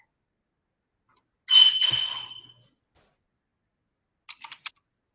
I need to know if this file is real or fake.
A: real